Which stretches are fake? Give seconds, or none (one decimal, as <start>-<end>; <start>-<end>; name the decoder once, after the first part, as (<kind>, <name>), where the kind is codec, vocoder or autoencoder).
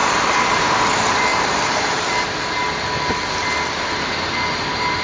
0.0-0.8 (vocoder, BigVGAN v2); 1.3-2.2